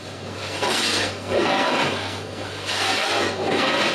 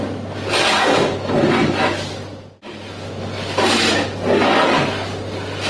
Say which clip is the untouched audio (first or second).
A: second